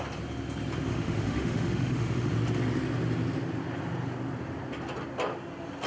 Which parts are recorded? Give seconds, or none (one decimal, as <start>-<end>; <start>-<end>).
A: 0.0-0.9; 2.3-5.9